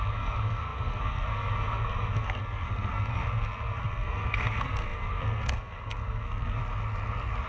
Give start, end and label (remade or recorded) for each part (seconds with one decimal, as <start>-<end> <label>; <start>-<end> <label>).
0.0-6.6 remade; 6.6-7.5 recorded